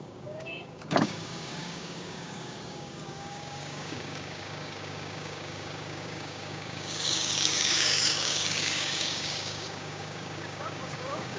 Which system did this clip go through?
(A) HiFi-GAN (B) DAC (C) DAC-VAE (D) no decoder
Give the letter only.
B